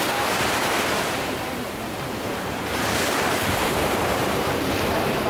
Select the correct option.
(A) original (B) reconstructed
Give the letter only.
B